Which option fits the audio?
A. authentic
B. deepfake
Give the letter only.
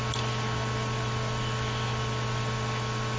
A